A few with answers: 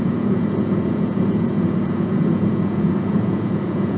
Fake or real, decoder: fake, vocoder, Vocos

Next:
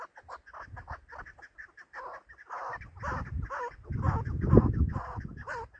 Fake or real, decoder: real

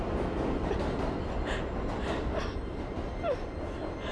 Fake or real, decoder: real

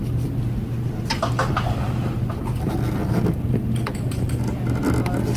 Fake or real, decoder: real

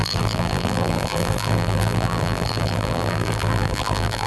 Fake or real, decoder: fake, vocoder, BigVGAN v2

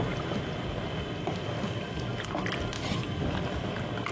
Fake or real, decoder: real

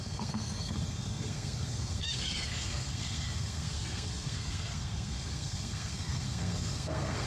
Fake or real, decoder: fake, codec, SNAC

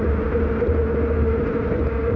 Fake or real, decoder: real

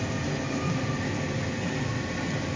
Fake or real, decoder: real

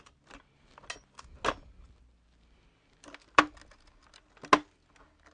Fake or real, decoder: real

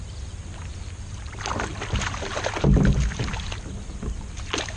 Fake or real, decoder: real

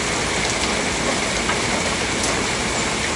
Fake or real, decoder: real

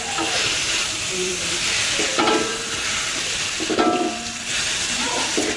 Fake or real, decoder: fake, vocoder, BigVGAN v2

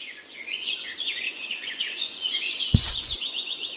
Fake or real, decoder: fake, vocoder, Vocos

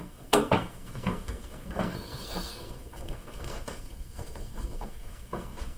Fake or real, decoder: fake, codec, SNAC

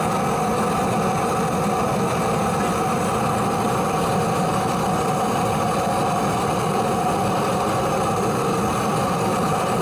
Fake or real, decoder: real